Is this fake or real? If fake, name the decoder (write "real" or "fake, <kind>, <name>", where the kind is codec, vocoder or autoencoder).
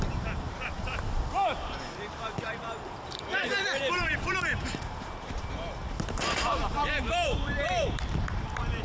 fake, vocoder, BigVGAN v2